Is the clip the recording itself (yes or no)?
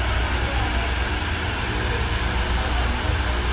yes